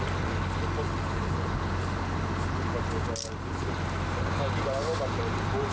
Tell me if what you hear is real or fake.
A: real